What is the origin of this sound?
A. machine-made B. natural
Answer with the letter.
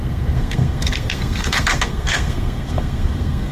A